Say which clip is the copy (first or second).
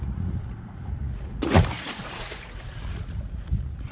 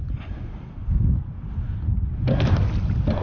first